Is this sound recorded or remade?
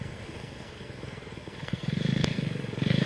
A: remade